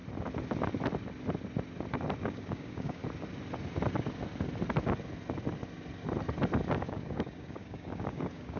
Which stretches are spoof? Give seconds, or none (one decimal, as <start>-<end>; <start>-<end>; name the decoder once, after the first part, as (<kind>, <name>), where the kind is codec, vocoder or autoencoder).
2.2-3.0 (codec, DAC); 6.8-8.6